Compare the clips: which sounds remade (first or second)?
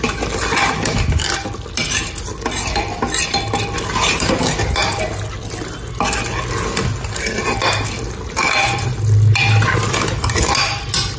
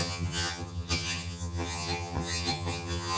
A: second